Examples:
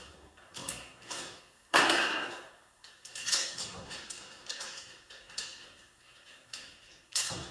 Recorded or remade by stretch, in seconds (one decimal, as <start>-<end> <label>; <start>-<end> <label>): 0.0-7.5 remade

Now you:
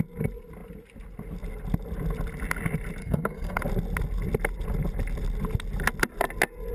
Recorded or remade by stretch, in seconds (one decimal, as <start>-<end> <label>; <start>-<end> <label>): 0.0-3.0 recorded; 3.0-3.6 remade; 3.6-6.7 recorded

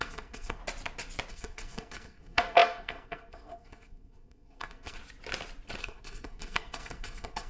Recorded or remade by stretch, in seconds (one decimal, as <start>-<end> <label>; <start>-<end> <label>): 0.0-0.6 remade; 0.6-1.3 recorded; 1.3-5.0 remade; 5.0-5.8 recorded; 5.8-7.5 remade

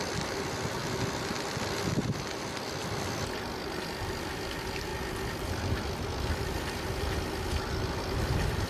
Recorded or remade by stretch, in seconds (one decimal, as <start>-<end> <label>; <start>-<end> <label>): 0.0-8.7 recorded